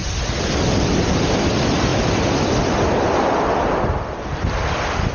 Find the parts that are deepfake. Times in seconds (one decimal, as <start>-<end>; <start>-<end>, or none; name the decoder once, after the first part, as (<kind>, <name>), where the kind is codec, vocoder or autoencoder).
0.0-1.0 (vocoder, BigVGAN v2)